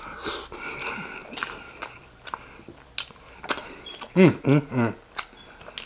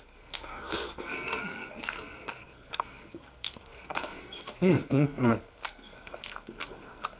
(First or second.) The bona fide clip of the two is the first